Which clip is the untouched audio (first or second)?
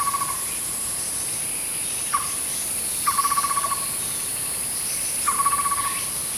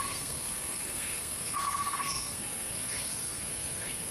first